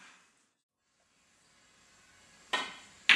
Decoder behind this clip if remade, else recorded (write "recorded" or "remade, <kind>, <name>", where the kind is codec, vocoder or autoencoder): recorded